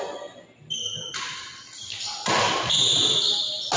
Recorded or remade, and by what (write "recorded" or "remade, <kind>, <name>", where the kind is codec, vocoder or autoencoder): recorded